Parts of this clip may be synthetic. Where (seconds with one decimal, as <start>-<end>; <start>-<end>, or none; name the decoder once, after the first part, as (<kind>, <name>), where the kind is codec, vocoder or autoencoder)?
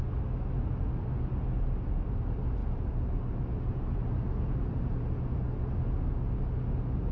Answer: 2.6-4.7 (vocoder, BigVGAN v2)